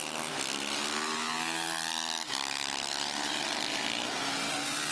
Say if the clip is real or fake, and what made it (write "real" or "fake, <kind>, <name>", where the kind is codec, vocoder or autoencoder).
real